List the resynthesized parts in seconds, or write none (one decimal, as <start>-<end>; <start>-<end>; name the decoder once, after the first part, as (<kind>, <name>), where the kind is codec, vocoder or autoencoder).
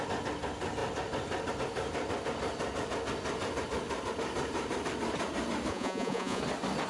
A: 5.7-6.4 (vocoder, Vocos)